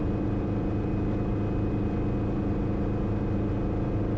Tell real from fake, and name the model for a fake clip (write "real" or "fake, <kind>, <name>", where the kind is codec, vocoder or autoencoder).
real